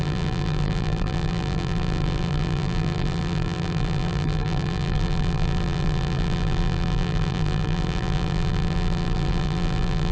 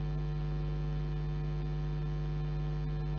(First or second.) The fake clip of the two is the first